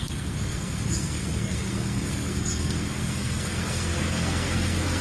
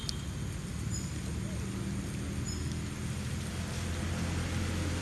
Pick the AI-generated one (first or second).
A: first